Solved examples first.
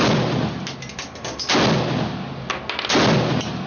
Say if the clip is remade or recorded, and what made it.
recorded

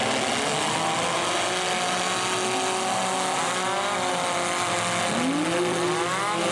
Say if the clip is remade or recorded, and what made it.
recorded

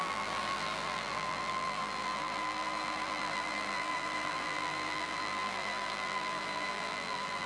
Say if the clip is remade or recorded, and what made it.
remade, vocoder, BigVGAN v2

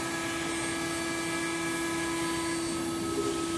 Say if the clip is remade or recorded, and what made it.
recorded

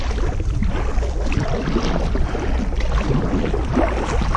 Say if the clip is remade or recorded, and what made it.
recorded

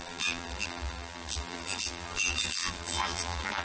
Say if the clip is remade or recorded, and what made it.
remade, vocoder, BigVGAN v2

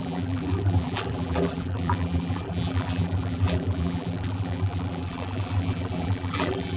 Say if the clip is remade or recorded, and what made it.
remade, vocoder, BigVGAN v2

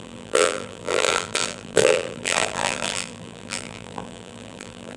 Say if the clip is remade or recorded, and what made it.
remade, vocoder, BigVGAN v2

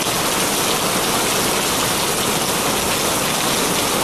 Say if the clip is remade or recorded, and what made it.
recorded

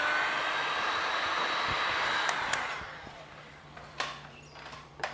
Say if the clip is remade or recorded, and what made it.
remade, vocoder, BigVGAN v2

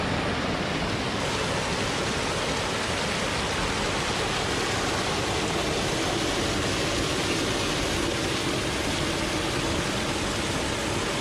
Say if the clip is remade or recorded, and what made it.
recorded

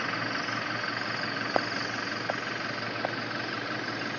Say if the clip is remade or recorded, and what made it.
recorded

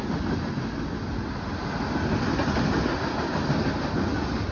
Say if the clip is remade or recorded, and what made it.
recorded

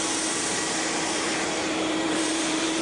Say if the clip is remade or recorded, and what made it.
remade, vocoder, BigVGAN v2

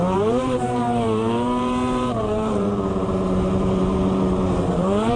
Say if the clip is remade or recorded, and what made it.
remade, vocoder, BigVGAN v2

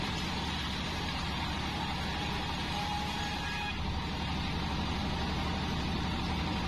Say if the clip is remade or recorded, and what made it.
remade, vocoder, BigVGAN v2